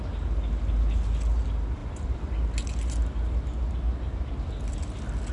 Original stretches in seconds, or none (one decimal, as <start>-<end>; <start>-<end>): 0.0-1.8; 2.5-5.3